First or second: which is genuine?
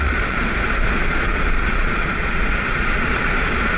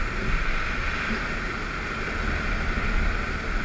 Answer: second